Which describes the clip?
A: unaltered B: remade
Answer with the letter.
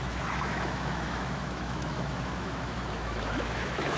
B